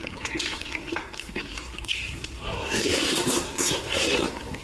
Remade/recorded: remade